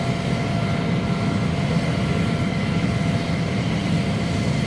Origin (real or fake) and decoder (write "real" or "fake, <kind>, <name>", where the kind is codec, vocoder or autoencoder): real